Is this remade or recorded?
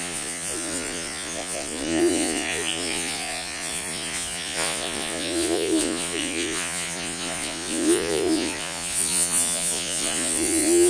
remade